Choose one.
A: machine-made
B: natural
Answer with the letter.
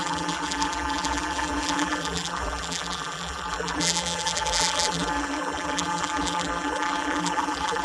A